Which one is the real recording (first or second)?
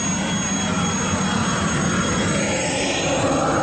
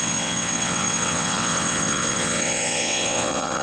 first